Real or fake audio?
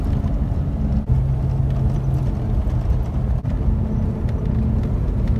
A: real